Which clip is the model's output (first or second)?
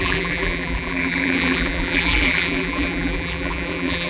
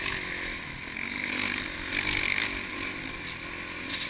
first